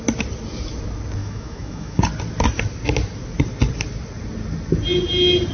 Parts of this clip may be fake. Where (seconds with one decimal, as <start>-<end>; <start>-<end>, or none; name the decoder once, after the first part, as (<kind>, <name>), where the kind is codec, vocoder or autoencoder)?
1.2-2.0 (autoencoder, DAC-VAE)